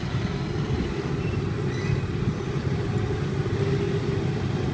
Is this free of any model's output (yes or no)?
yes